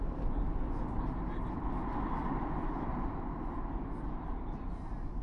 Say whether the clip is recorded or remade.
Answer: recorded